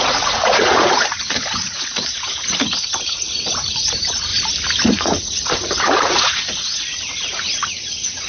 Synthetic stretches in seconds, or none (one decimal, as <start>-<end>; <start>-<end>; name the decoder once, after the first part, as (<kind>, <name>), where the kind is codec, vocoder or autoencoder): 0.0-4.3 (vocoder, Vocos); 4.9-8.3